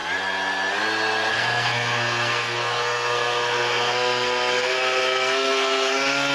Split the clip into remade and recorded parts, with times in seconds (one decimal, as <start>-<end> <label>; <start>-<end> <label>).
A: 0.0-1.3 recorded; 1.3-6.3 remade